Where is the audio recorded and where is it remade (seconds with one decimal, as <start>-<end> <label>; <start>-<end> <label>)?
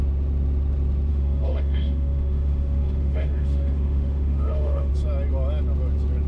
0.0-1.1 recorded; 1.1-4.9 remade; 4.9-6.3 recorded